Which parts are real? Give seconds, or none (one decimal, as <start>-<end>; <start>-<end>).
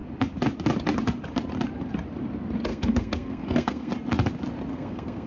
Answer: 0.0-2.7; 3.9-4.7